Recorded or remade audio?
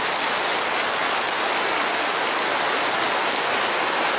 recorded